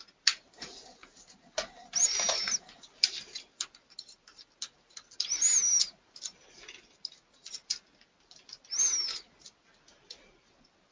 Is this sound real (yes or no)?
yes